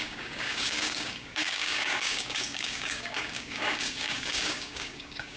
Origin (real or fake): fake